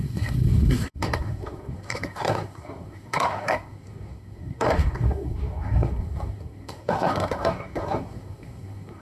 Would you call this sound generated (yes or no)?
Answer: yes